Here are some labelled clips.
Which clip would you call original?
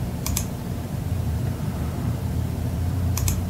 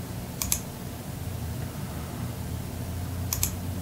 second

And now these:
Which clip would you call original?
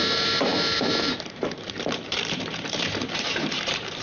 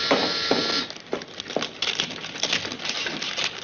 second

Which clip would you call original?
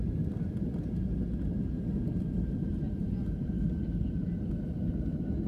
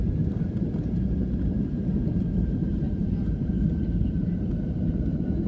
first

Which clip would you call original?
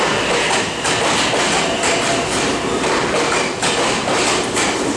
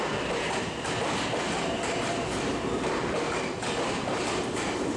first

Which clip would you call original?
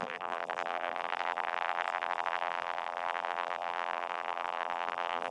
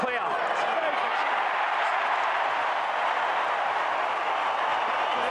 second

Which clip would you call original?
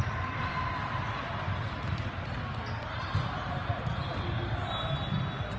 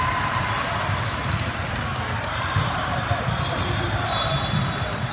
first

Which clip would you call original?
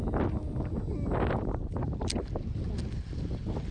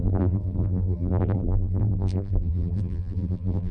first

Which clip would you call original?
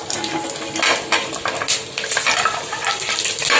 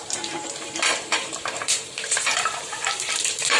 first